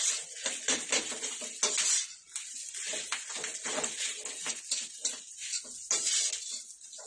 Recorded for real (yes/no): yes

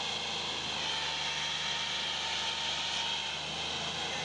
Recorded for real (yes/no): yes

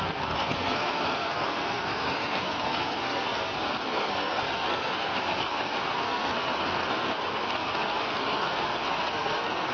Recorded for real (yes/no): no